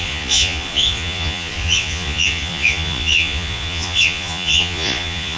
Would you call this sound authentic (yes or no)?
no